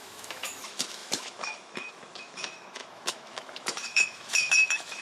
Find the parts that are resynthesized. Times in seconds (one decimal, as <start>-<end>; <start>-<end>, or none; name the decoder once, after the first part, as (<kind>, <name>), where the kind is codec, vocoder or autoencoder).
0.0-5.0 (autoencoder, DAC-VAE)